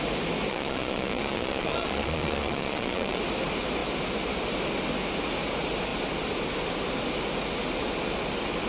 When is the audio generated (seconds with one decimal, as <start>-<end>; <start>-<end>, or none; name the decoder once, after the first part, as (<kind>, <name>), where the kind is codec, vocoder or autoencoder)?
0.5-3.2 (vocoder, Vocos)